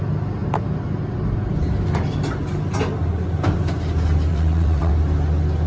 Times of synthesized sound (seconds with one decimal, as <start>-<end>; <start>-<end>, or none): 4.3-4.9